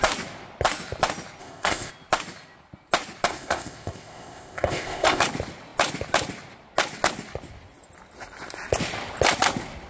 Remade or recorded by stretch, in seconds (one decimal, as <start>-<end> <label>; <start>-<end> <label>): 0.0-1.4 recorded; 1.4-1.9 remade; 1.9-3.3 recorded; 3.3-5.2 remade; 5.2-9.9 recorded